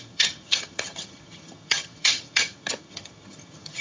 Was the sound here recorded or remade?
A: remade